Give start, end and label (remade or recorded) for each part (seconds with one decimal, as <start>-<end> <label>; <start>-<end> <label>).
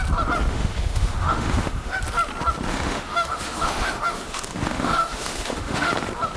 0.0-0.5 recorded; 0.5-2.0 remade; 2.0-2.7 recorded; 2.7-5.9 remade; 5.9-6.4 recorded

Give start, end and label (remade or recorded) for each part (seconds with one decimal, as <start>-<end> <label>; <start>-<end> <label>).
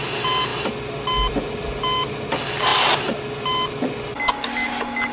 0.0-5.1 recorded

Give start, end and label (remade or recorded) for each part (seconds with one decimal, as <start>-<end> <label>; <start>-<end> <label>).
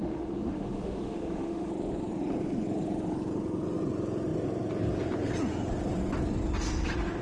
0.0-1.7 remade; 1.7-7.2 recorded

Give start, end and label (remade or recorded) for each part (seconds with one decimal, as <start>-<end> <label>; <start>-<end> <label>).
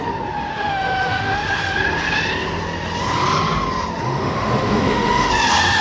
0.0-0.5 recorded; 0.5-1.7 remade; 1.7-4.0 recorded; 4.0-5.3 remade; 5.3-5.8 recorded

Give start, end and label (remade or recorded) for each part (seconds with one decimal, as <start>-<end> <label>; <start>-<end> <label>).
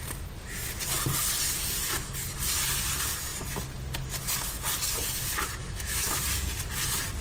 0.0-5.6 recorded; 5.6-6.2 remade; 6.2-7.2 recorded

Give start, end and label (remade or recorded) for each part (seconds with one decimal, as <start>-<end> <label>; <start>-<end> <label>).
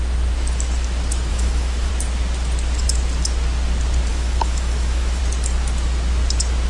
0.0-1.3 recorded; 1.3-1.9 remade; 1.9-4.1 recorded; 4.1-5.2 remade; 5.2-6.7 recorded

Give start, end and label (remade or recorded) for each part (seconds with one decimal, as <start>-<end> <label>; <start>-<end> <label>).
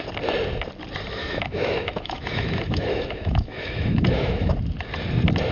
0.0-1.2 recorded; 1.2-4.5 remade; 4.5-5.5 recorded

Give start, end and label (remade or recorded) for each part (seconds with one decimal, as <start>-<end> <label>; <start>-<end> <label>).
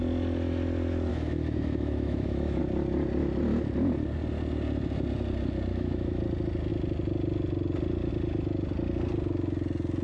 0.0-1.1 recorded; 1.1-2.6 remade; 2.6-5.7 recorded; 5.7-6.2 remade; 6.2-10.0 recorded